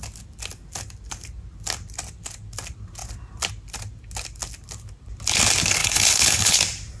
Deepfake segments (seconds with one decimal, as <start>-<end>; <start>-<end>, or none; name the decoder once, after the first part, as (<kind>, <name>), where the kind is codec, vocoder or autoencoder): 5.8-6.6 (codec, HILCodec)